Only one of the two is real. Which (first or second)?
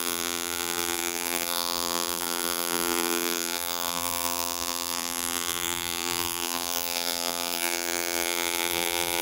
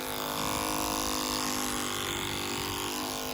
second